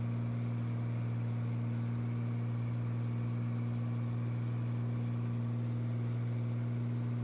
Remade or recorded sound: recorded